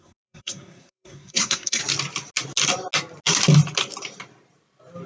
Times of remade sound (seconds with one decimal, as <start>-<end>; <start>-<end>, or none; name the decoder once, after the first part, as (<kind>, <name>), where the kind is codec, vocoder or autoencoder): 0.0-1.8 (codec, SNAC)